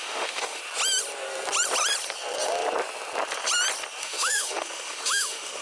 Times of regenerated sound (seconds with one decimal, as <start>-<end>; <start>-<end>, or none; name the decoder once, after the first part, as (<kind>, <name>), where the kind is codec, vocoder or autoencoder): 0.0-0.6 (autoencoder, DAC-VAE); 4.0-5.6

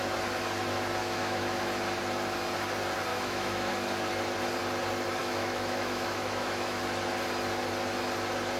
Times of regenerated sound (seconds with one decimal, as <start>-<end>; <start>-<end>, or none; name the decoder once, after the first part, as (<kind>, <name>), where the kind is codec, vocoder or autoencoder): 1.0-1.6 (autoencoder, DAC-VAE); 3.1-3.7; 5.2-6.8